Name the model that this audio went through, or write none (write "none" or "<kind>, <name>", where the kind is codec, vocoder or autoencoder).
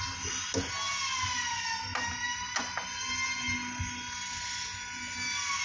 none